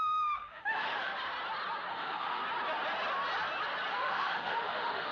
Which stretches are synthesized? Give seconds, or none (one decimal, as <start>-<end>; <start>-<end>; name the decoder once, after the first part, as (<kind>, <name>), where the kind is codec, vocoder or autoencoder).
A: 0.0-1.1 (autoencoder, DAC-VAE); 1.9-2.4; 3.9-5.1